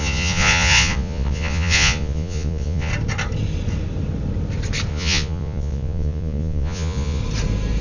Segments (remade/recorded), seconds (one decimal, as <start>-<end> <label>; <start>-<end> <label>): 0.0-2.9 remade; 2.9-4.9 recorded; 4.9-7.2 remade; 7.2-7.8 recorded